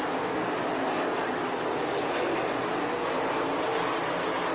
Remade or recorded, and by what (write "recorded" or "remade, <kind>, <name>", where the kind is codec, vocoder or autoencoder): recorded